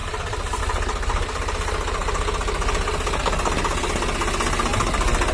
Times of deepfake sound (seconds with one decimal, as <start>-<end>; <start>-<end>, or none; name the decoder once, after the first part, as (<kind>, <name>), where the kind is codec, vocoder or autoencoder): 0.0-0.6 (vocoder, BigVGAN v2)